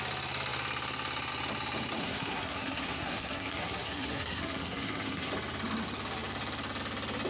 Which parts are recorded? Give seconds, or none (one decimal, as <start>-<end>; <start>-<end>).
0.0-2.0; 5.3-7.3